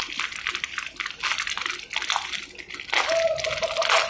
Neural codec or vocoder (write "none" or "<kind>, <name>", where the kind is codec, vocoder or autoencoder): none